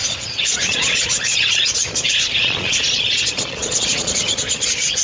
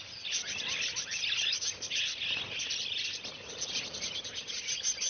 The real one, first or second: second